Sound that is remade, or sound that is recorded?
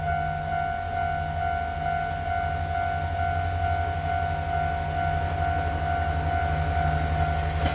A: recorded